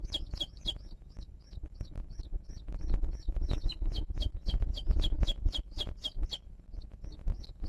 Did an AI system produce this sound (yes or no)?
yes